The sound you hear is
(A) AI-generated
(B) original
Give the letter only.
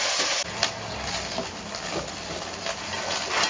B